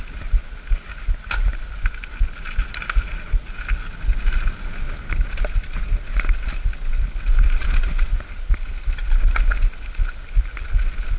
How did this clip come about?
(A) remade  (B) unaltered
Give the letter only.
B